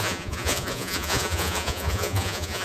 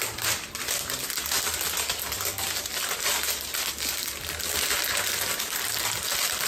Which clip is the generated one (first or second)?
first